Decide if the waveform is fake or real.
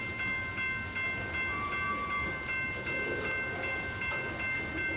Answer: real